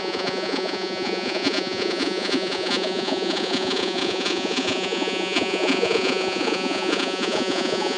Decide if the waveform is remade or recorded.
remade